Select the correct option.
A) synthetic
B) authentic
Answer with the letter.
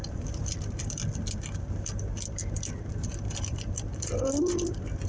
A